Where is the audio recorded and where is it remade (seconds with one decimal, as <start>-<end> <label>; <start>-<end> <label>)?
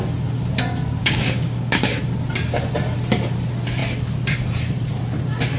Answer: 0.0-1.0 recorded; 1.0-2.0 remade; 2.0-5.6 recorded